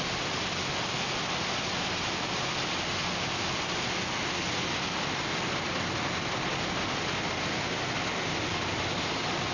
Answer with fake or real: real